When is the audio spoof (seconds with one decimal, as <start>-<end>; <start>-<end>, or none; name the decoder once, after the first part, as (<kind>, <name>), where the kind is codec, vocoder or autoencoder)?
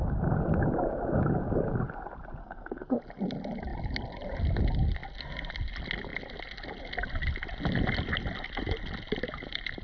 2.4-3.0 (codec, SNAC)